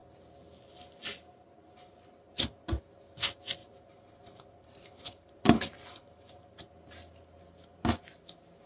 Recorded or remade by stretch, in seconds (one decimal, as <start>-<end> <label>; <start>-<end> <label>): 0.0-3.6 recorded; 3.6-6.4 remade; 6.4-8.7 recorded